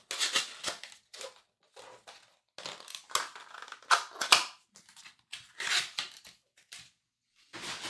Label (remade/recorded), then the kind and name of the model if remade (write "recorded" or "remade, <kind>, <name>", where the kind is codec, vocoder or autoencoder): recorded